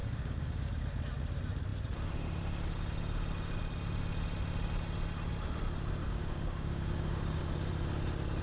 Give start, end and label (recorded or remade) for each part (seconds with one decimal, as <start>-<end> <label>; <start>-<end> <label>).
0.0-0.7 remade; 0.7-6.0 recorded; 6.0-7.4 remade; 7.4-8.4 recorded